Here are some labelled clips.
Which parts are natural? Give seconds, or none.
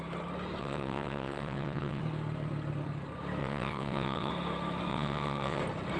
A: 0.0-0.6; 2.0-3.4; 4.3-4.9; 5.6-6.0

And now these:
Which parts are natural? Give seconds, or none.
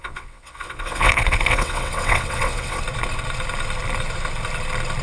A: 2.8-5.0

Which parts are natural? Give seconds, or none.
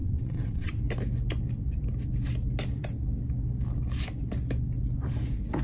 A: 0.8-5.6